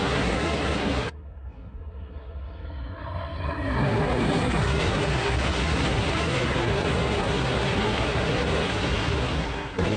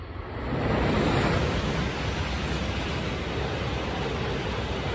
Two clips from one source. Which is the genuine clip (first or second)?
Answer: second